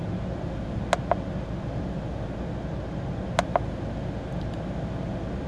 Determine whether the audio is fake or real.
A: real